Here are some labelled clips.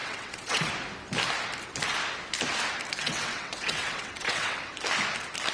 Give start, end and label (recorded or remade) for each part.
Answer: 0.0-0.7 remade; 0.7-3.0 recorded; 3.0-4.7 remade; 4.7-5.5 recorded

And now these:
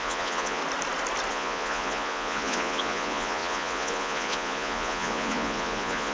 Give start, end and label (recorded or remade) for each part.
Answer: 0.0-0.6 remade; 0.6-1.3 recorded; 1.3-6.1 remade

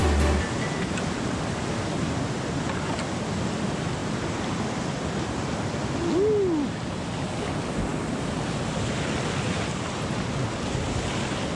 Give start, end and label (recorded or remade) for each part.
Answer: 0.0-11.6 recorded

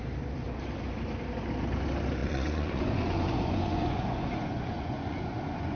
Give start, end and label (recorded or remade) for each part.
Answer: 0.0-2.2 recorded; 2.2-5.8 remade

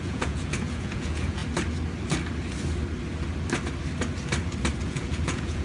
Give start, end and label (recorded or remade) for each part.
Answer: 0.0-1.4 remade; 1.4-4.8 recorded; 4.8-5.6 remade

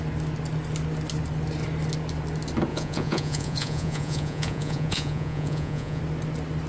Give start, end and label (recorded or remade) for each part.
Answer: 0.0-2.7 recorded; 2.7-6.0 remade; 6.0-6.7 recorded

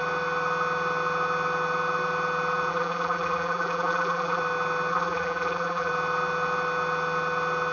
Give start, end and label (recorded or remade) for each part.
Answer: 0.0-2.7 recorded; 2.7-4.4 remade; 4.4-4.9 recorded; 4.9-5.9 remade; 5.9-7.7 recorded

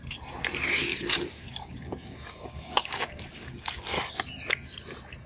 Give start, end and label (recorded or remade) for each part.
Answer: 0.0-0.9 recorded; 0.9-4.1 remade; 4.1-5.3 recorded